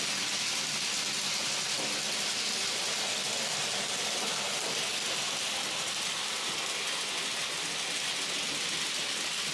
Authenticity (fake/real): real